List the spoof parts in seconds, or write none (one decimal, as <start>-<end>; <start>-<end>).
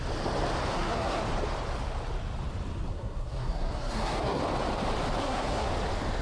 0.7-1.2; 2.9-4.4; 5.2-5.7